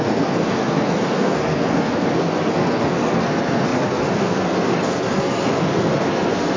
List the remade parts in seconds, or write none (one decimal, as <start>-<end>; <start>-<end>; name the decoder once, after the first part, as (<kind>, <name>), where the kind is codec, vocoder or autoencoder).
0.0-6.6 (codec, SNAC)